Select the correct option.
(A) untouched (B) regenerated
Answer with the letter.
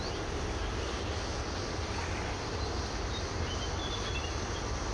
A